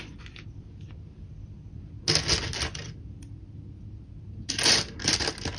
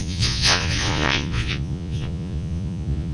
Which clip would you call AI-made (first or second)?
second